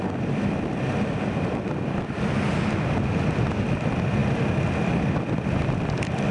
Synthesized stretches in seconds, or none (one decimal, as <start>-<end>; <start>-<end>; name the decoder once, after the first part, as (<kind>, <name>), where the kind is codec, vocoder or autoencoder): none